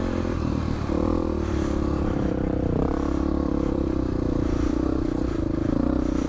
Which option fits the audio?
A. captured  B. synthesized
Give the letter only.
B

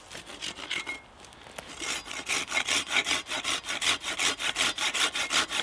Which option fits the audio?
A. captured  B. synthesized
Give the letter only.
A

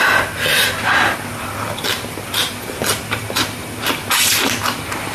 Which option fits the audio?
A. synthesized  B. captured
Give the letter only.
B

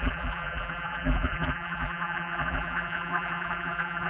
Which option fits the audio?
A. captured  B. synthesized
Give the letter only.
B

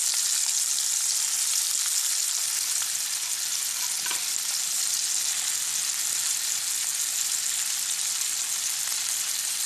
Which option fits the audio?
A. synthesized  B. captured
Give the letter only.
B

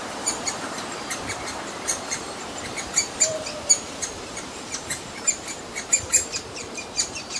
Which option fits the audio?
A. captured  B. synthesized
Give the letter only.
B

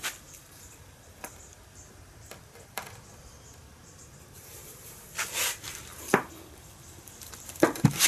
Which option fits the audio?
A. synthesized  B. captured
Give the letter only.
A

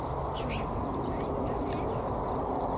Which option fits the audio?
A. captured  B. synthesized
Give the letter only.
A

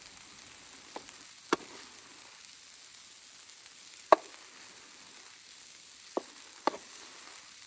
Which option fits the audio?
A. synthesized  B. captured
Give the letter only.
B